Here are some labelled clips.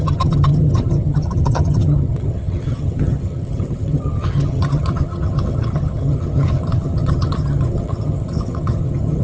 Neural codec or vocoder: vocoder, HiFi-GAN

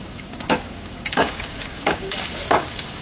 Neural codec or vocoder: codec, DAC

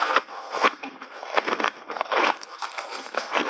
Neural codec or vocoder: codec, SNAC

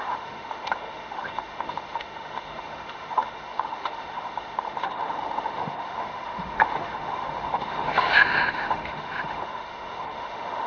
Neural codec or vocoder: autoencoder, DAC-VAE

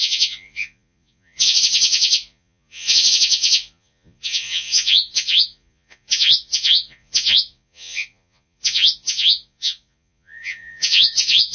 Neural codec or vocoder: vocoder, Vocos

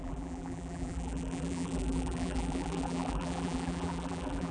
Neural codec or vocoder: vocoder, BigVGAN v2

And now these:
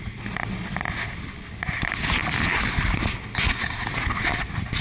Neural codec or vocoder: none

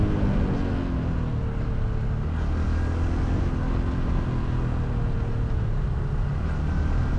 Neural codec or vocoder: none